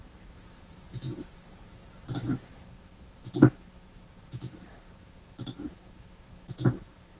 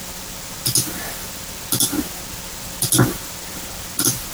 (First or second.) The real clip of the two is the second